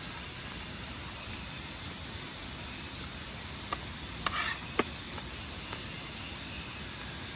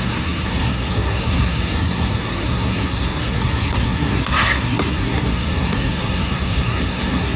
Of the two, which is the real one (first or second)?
first